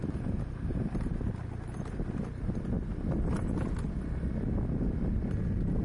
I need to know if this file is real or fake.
real